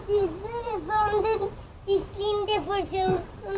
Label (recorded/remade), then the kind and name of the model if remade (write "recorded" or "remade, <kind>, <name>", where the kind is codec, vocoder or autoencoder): remade, vocoder, BigVGAN v2